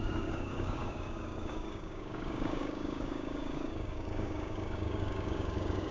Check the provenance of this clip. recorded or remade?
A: remade